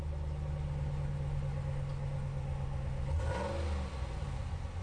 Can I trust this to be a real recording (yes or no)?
yes